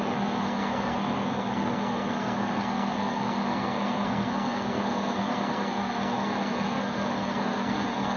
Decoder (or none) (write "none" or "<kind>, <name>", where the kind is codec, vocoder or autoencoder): codec, SNAC